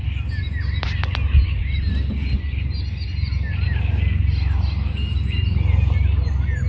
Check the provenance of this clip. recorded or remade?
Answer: recorded